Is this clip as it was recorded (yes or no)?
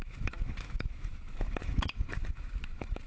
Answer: no